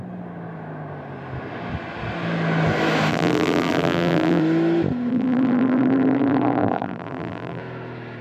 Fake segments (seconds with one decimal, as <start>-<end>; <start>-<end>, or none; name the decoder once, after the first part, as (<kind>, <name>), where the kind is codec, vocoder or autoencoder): 3.1-4.4 (vocoder, BigVGAN v2); 5.1-7.6